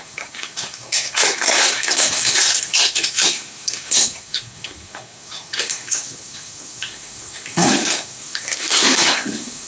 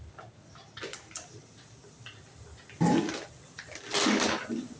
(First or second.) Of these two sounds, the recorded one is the second